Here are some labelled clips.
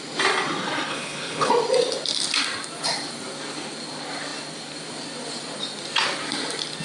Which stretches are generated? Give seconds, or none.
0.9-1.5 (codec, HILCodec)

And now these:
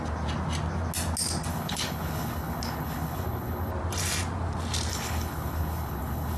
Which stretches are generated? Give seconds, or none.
1.5-3.7 (codec, HILCodec); 4.9-6.4

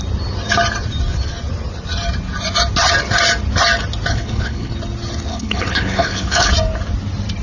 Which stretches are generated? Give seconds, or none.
4.1-4.7 (codec, HILCodec); 5.3-6.5